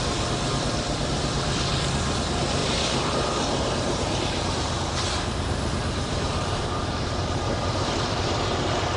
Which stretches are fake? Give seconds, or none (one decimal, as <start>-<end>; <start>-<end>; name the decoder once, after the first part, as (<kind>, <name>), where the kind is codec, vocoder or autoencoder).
2.6-7.9 (vocoder, BigVGAN v2)